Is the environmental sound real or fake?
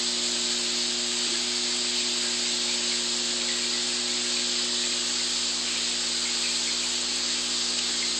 real